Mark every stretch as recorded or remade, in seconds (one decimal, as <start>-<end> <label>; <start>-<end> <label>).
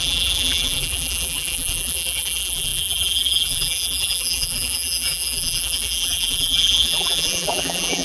0.0-8.0 remade